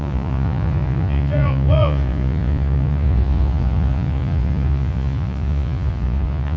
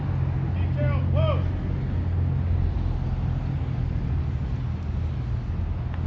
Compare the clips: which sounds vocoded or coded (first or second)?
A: first